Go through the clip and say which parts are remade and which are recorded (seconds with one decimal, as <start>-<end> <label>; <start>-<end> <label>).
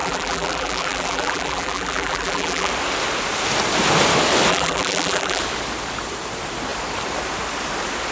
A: 0.0-2.7 remade; 2.7-4.5 recorded; 4.5-5.4 remade; 5.4-8.1 recorded